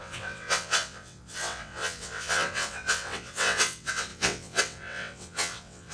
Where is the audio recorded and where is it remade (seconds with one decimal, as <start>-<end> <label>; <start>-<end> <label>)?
0.0-5.9 remade